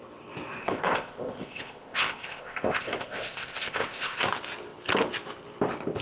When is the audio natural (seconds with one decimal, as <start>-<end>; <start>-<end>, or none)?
0.0-0.6; 4.2-6.0